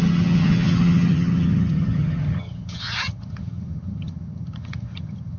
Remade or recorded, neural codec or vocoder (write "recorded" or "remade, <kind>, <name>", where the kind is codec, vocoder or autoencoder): remade, vocoder, HiFi-GAN